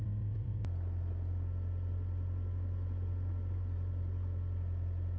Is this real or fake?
real